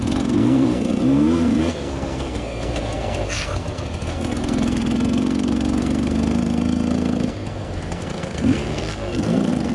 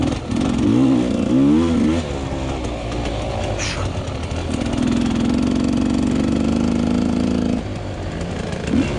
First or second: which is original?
second